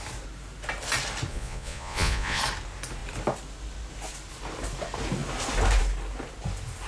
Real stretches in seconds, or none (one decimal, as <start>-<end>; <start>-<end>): 0.0-1.3; 2.4-6.9